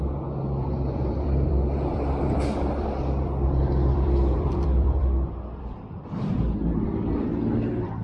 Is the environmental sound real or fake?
fake